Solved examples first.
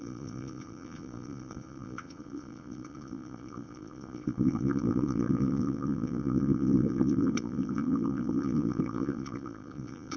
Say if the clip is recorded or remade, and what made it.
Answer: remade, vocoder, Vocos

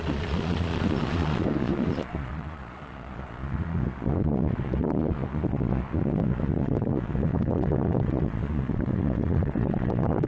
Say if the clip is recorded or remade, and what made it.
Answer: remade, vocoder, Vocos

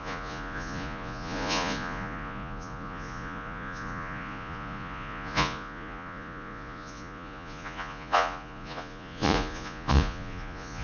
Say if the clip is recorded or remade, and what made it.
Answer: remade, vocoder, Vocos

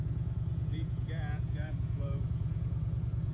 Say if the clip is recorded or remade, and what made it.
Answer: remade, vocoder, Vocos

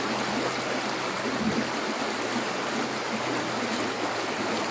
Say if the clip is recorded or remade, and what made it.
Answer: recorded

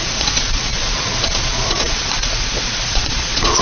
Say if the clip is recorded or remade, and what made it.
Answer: remade, vocoder, Vocos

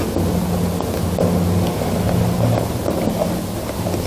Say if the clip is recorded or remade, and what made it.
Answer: recorded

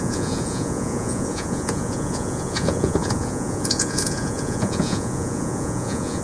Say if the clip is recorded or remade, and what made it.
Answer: remade, vocoder, Vocos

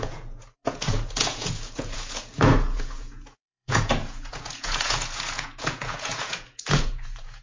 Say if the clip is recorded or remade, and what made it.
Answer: remade, vocoder, Vocos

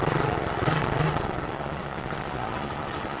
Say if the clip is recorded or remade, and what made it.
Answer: remade, vocoder, Vocos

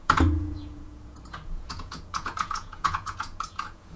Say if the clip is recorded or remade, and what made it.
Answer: remade, vocoder, Vocos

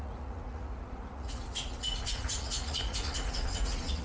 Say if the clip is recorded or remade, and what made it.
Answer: remade, vocoder, Vocos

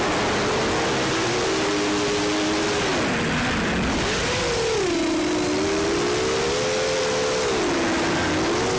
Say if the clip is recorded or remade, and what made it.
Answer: recorded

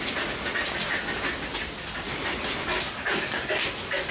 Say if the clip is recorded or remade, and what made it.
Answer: recorded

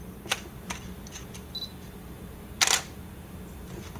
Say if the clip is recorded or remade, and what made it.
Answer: recorded